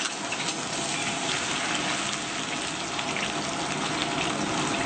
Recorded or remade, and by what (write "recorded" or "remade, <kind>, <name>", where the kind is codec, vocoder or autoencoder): recorded